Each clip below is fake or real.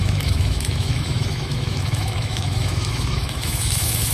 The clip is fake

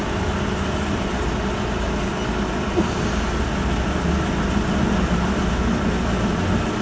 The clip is real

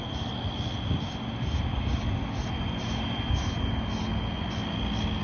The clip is real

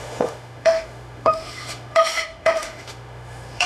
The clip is fake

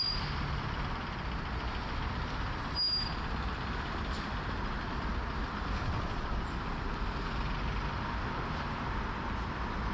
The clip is real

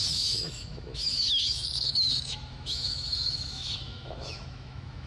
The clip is fake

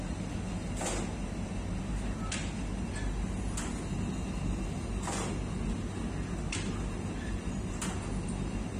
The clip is real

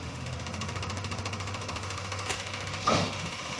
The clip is fake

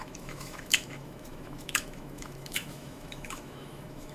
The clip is fake